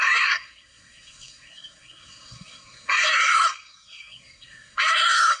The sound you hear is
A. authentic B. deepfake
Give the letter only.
B